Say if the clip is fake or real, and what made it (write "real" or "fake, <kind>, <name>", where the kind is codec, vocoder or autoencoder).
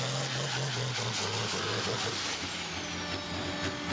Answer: real